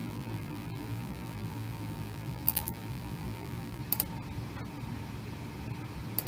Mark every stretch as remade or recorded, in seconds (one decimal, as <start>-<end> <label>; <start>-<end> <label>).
0.0-3.8 remade; 3.8-6.3 recorded